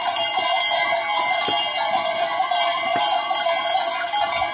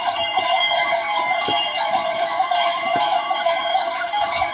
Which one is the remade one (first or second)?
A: second